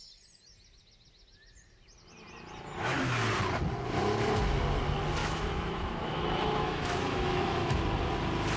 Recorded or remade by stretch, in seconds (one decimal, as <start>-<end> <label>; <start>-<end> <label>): 0.0-5.2 recorded; 5.2-7.8 remade; 7.8-8.6 recorded